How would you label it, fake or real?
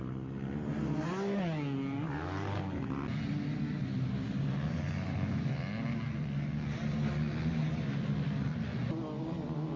real